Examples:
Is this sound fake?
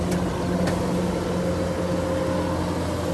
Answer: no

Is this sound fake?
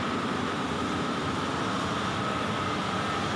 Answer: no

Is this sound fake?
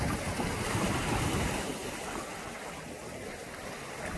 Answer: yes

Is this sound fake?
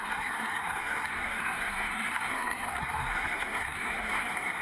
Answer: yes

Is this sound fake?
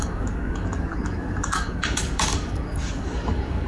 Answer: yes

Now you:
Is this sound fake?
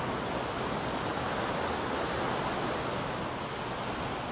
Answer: no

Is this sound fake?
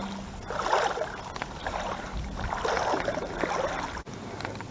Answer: no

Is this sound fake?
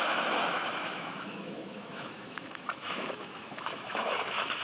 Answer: yes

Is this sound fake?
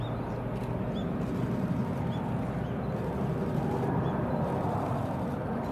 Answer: no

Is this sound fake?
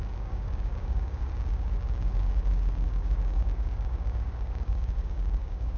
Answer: yes